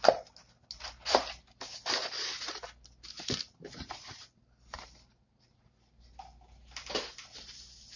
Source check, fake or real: real